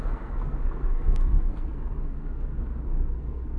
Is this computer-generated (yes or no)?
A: yes